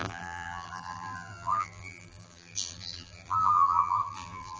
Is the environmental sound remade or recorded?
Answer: remade